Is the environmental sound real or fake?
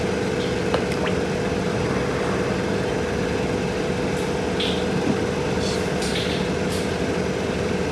real